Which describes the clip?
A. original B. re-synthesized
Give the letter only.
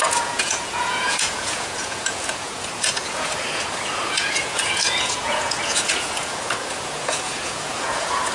B